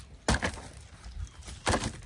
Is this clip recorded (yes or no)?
yes